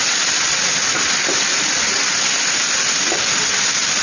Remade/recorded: recorded